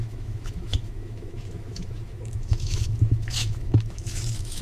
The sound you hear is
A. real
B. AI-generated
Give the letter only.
B